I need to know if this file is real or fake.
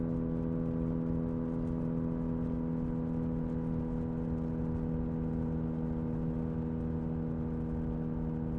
real